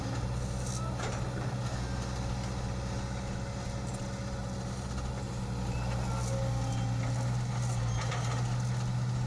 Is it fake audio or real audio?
real